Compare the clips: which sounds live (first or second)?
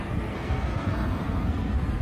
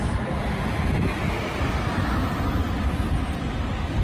second